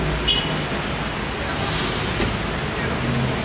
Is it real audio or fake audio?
real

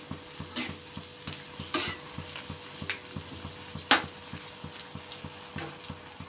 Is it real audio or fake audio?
real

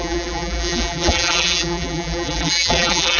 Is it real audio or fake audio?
fake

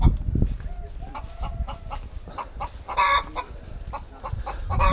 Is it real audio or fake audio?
real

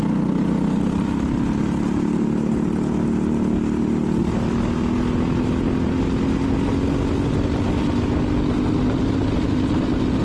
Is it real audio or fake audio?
real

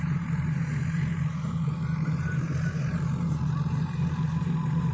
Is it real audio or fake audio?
fake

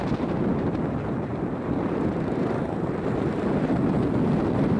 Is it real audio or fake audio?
real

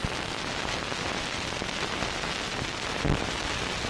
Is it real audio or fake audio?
real